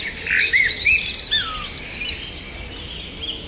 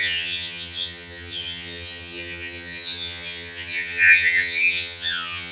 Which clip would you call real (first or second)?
first